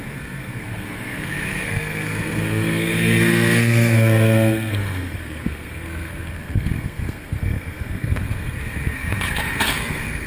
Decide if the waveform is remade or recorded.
remade